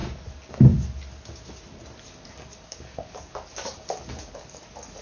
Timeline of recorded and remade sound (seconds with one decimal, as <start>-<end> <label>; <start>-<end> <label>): 0.0-2.0 recorded; 2.0-5.0 remade